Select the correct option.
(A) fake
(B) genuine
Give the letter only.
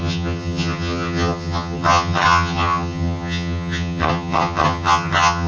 A